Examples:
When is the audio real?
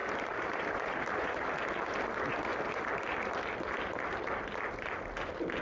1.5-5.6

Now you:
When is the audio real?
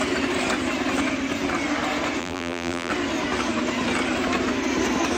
0.0-2.2; 2.9-5.2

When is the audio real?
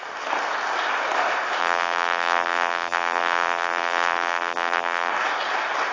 0.0-1.6; 5.1-5.9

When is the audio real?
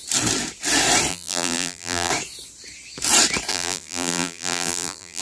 0.0-1.1; 2.1-3.5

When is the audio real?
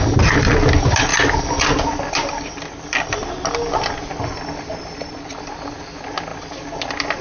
0.0-1.1; 5.4-7.2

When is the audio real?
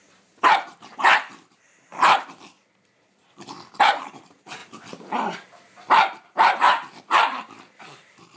1.9-4.0